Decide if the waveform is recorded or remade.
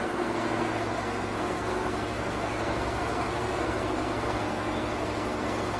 remade